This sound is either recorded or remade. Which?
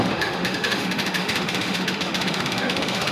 remade